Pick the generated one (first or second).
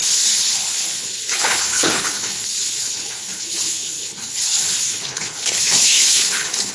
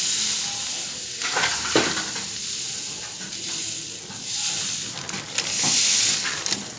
first